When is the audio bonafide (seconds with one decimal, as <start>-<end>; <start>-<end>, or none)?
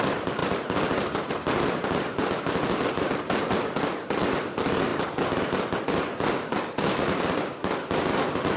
0.0-8.6